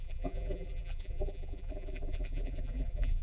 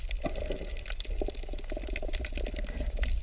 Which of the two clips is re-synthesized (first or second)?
first